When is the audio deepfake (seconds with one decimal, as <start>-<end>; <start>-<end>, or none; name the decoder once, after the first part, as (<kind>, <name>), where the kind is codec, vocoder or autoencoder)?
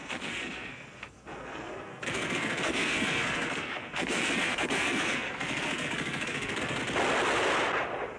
0.0-6.8 (codec, SNAC)